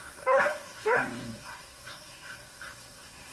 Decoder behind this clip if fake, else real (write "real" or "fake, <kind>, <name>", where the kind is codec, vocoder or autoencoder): fake, codec, SNAC